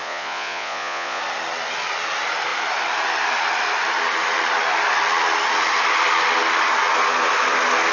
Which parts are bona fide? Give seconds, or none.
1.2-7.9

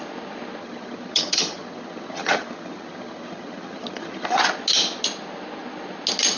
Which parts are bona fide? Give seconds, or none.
0.0-0.6; 4.4-6.4

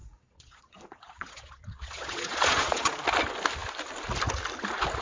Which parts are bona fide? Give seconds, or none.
3.0-5.0

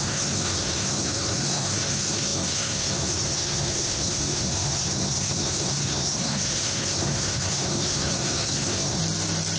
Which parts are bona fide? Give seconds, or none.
9.0-9.6

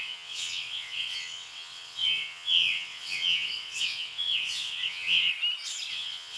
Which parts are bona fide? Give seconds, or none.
5.3-5.9

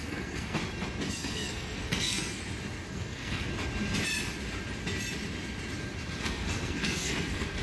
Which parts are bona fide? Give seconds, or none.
0.6-1.1; 2.4-2.9; 3.5-6.2